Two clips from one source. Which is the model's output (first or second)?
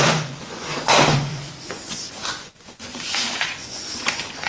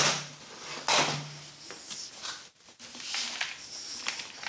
first